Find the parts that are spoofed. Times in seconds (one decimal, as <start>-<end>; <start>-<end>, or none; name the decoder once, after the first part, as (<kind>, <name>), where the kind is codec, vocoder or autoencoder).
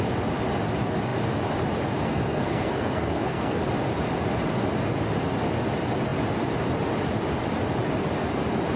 2.0-3.6 (codec, SNAC)